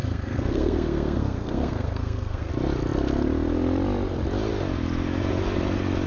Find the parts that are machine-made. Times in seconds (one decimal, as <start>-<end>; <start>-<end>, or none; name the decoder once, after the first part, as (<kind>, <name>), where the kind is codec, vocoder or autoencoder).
0.0-2.5 (codec, SNAC)